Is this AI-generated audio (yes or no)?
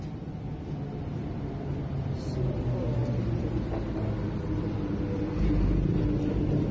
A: no